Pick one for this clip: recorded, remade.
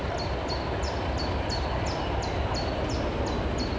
recorded